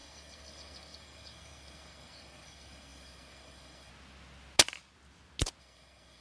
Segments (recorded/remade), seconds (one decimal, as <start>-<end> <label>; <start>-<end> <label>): 0.0-3.9 remade; 3.9-5.6 recorded; 5.6-6.2 remade